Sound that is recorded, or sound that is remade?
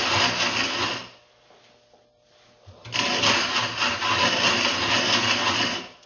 recorded